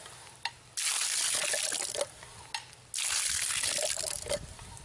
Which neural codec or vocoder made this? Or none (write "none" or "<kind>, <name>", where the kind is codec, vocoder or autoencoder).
none